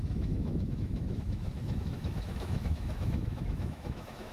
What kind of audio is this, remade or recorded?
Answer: remade